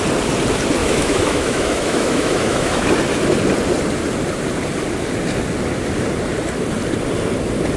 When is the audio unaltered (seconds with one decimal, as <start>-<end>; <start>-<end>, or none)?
0.0-0.8; 2.9-7.8